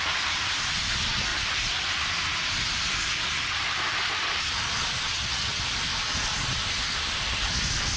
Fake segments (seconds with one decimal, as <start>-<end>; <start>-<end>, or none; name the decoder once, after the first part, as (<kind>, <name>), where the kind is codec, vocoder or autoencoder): 5.1-5.6 (vocoder, HiFi-GAN)